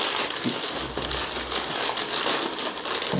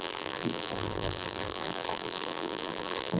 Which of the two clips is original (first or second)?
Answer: first